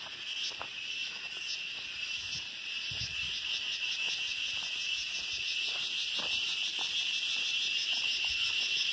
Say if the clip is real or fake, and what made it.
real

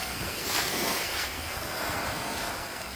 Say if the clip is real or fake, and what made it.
fake, codec, SNAC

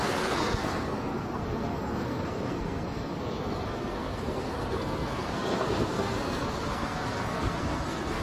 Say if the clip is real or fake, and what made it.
fake, codec, SNAC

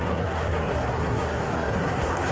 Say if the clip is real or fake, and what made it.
fake, codec, SNAC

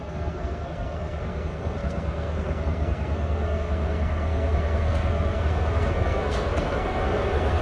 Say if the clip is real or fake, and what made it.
fake, codec, SNAC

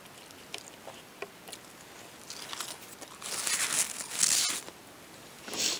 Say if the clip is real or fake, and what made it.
real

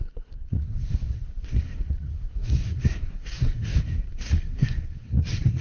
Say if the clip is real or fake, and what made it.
fake, codec, SNAC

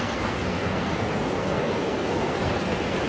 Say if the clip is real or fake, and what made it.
fake, codec, SNAC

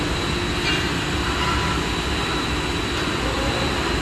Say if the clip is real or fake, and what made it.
real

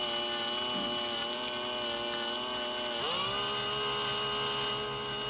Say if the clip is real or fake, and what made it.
real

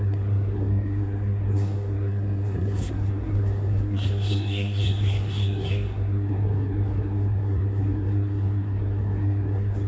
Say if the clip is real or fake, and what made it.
fake, codec, SNAC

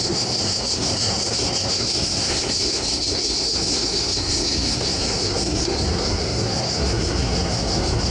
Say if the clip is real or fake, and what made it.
fake, codec, SNAC